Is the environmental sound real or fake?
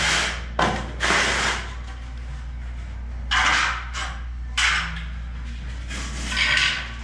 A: real